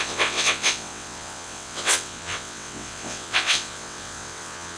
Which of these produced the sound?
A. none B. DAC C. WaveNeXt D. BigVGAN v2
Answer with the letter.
C